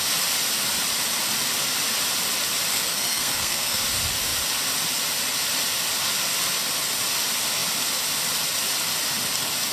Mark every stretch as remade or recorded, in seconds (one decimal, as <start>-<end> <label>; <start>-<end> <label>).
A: 0.0-2.7 recorded; 2.7-3.8 remade; 3.8-9.7 recorded

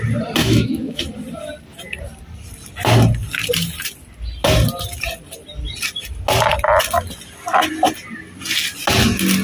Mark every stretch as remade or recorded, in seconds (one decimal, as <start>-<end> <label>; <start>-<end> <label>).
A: 0.0-0.4 recorded; 0.4-1.0 remade; 1.0-9.4 recorded

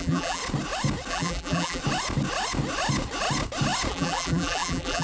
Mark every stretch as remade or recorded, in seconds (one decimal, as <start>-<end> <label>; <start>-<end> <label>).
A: 0.0-0.4 remade; 0.4-1.1 recorded; 1.1-1.8 remade; 1.8-3.9 recorded; 3.9-5.0 remade

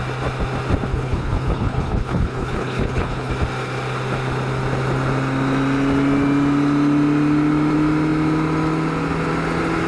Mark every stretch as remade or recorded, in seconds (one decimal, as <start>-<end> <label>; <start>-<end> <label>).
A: 0.0-0.9 recorded; 0.9-3.3 remade; 3.3-9.9 recorded

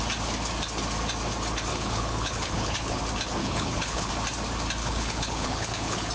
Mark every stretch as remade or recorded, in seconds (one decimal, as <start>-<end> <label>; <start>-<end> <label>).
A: 0.0-1.7 recorded; 1.7-3.0 remade; 3.0-3.4 recorded; 3.4-4.1 remade; 4.1-4.8 recorded; 4.8-6.1 remade